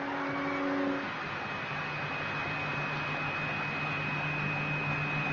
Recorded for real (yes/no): yes